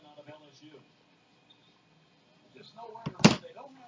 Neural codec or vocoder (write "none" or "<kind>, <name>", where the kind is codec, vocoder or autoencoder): none